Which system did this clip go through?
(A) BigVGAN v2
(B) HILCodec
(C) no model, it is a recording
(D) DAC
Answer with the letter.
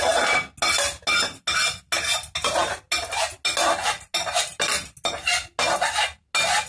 C